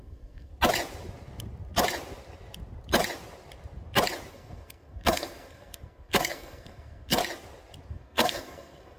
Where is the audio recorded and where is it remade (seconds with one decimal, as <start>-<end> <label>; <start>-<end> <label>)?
0.0-0.5 remade; 0.5-4.3 recorded; 4.3-7.2 remade; 7.2-7.9 recorded; 7.9-9.0 remade